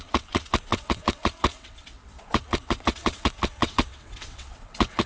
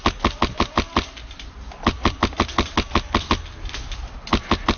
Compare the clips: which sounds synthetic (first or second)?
first